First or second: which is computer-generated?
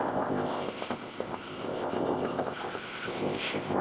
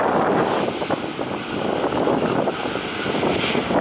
first